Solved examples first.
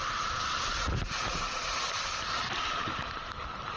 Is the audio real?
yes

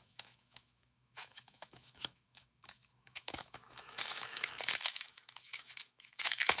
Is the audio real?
no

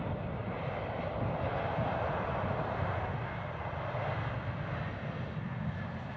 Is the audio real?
yes